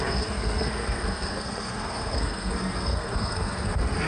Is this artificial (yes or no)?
yes